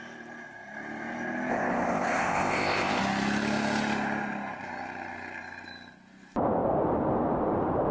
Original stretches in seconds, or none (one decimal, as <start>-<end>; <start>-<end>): 0.0-1.5; 3.0-7.9